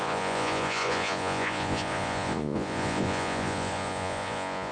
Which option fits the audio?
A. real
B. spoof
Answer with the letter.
B